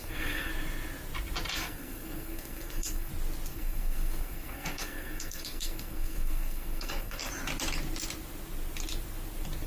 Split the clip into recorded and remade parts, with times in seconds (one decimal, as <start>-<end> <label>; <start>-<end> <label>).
0.0-0.5 remade; 0.5-1.5 recorded; 1.5-3.1 remade; 3.1-3.5 recorded; 3.5-7.3 remade; 7.3-9.7 recorded